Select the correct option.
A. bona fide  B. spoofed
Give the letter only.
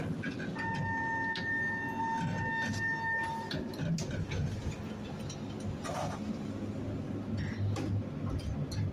A